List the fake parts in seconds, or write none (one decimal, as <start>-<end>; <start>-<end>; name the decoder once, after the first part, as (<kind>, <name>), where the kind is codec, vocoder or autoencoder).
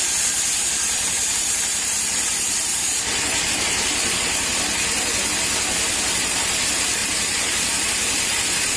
2.8-3.5 (vocoder, BigVGAN v2)